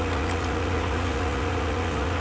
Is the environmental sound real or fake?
fake